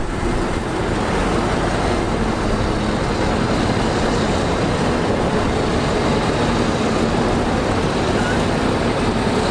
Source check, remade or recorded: recorded